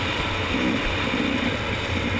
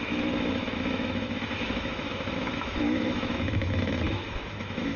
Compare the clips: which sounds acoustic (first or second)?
first